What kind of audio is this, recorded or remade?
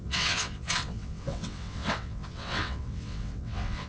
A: remade